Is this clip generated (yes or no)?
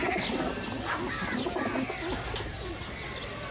no